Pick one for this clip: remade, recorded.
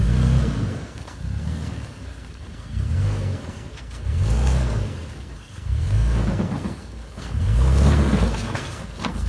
remade